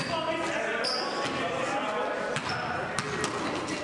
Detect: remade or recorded recorded